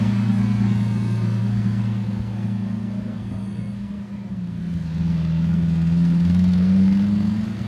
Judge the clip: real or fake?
fake